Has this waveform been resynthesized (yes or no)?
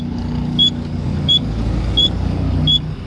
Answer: yes